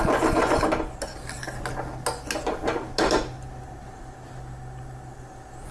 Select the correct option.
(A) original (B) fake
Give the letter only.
A